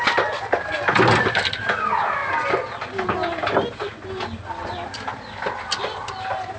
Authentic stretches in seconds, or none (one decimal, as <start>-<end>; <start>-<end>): 0.0-6.6